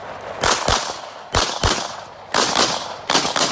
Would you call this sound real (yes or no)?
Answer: yes